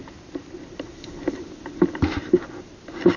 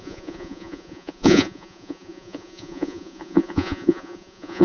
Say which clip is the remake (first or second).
second